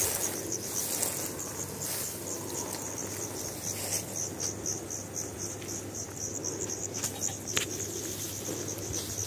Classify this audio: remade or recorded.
recorded